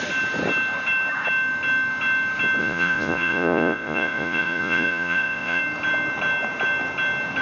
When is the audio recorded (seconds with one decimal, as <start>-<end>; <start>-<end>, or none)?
0.0-2.6; 5.6-7.4

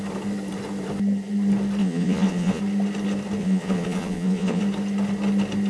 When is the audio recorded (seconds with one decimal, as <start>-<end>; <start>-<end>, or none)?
0.0-1.8; 2.6-3.4; 4.6-5.7